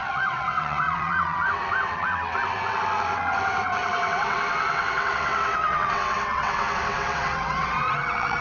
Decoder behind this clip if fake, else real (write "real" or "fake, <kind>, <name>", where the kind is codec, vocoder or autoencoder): fake, vocoder, WaveNeXt